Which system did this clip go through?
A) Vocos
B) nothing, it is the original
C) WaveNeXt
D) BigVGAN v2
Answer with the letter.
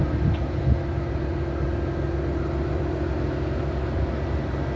B